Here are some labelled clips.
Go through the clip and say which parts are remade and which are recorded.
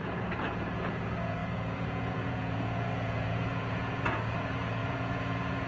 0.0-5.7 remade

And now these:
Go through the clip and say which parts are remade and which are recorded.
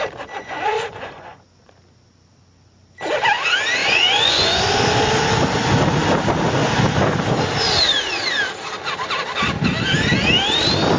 0.0-0.4 recorded; 0.4-1.7 remade; 1.7-3.8 recorded; 3.8-4.6 remade; 4.6-11.0 recorded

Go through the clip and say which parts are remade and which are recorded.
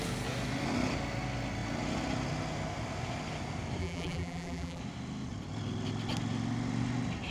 0.0-3.8 recorded; 3.8-4.8 remade; 4.8-7.3 recorded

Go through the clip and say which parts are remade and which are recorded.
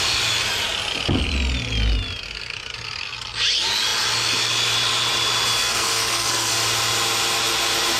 0.0-5.6 recorded; 5.6-6.5 remade; 6.5-8.0 recorded